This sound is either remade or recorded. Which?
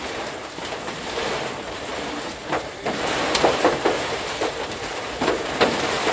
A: remade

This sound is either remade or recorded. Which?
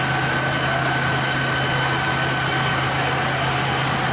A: recorded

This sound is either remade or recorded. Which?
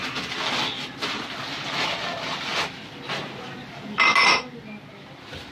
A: recorded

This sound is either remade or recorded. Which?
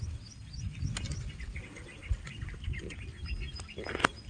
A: recorded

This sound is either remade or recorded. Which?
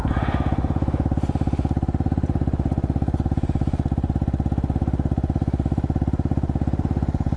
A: recorded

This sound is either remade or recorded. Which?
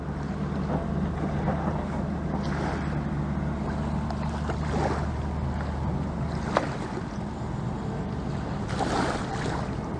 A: recorded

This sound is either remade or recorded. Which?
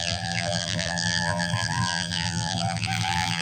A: remade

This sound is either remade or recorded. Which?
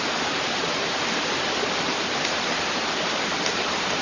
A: remade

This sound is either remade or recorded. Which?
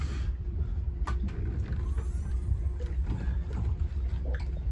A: remade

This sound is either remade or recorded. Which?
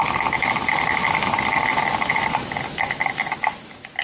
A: recorded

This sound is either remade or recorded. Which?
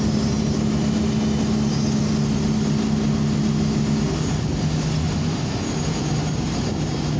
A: recorded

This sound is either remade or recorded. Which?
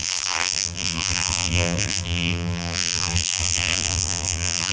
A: remade